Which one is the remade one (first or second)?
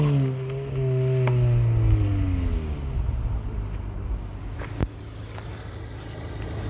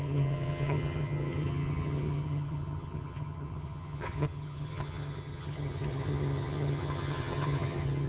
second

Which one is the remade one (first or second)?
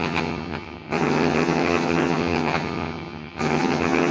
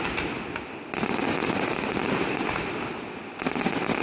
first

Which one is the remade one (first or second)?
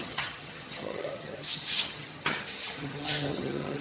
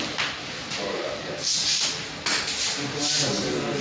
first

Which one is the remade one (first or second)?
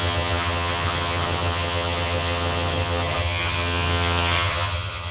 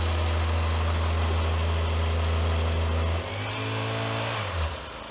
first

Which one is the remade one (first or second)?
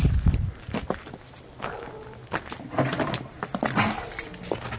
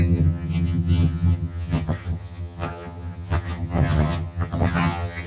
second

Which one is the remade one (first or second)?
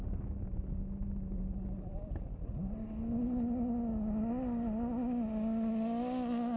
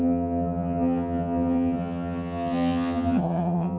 second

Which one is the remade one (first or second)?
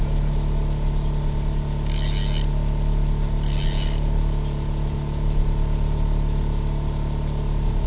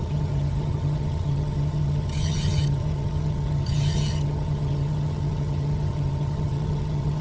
second